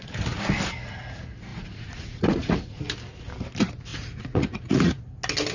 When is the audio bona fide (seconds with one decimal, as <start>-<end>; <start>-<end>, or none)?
0.0-1.5; 2.8-3.9; 5.0-5.5